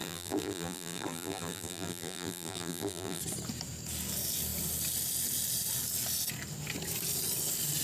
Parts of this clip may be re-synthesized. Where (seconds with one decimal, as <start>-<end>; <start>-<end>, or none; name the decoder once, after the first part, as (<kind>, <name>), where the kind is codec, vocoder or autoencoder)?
0.0-3.2 (vocoder, BigVGAN v2)